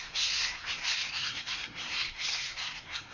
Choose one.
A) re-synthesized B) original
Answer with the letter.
A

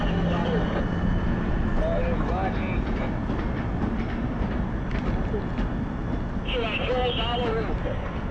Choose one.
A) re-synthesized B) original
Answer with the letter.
B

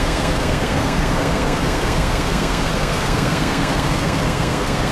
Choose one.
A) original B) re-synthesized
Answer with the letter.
B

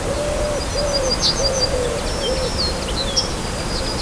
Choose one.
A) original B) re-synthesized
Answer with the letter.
A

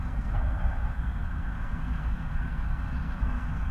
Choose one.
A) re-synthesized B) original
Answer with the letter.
A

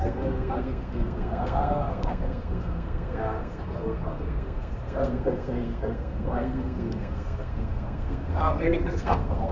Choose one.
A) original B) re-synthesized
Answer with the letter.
B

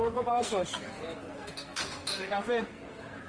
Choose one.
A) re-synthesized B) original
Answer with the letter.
A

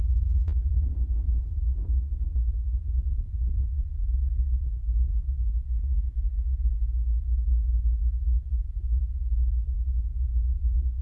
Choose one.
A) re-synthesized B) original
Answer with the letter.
B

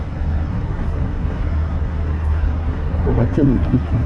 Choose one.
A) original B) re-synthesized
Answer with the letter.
B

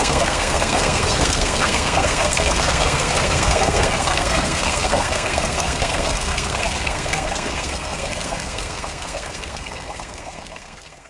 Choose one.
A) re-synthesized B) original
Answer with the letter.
A